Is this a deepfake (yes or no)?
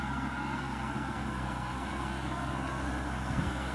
yes